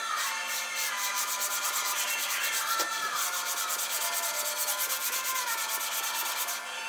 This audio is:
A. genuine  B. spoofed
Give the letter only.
A